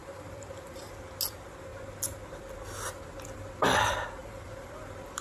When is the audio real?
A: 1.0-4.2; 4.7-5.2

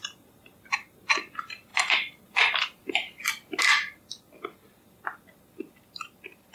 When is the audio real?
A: none

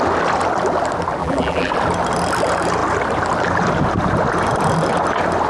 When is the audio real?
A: 0.0-1.2; 1.7-5.5

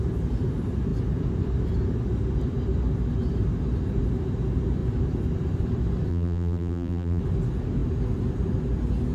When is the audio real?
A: 0.0-6.1; 7.2-9.1

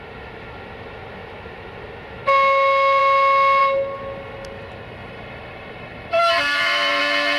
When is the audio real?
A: 0.0-5.0; 7.0-7.4

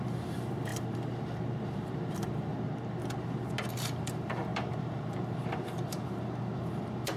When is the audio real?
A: 2.5-3.7